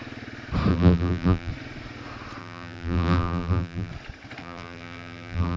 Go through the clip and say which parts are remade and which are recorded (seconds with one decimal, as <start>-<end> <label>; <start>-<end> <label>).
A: 0.0-0.7 recorded; 0.7-1.5 remade; 1.5-2.4 recorded; 2.4-3.9 remade; 3.9-4.4 recorded; 4.4-5.6 remade